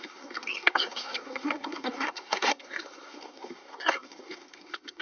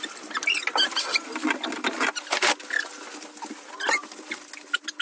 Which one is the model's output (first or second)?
first